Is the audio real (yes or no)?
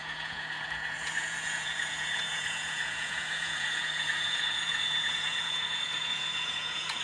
no